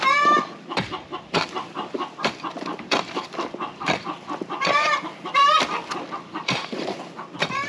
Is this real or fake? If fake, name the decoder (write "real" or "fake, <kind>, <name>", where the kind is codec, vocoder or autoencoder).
fake, vocoder, BigVGAN v2